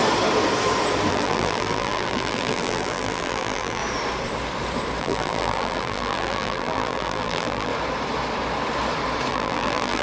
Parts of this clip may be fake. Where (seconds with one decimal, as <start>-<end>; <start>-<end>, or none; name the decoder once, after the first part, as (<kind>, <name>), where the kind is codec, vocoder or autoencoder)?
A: 1.1-3.8 (vocoder, BigVGAN v2); 5.0-7.7; 9.3-10.0